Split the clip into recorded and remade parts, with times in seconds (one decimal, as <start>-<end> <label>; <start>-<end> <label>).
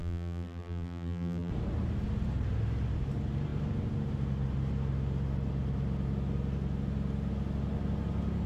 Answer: 0.0-1.5 remade; 1.5-8.5 recorded